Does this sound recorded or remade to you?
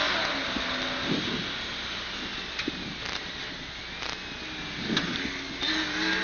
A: recorded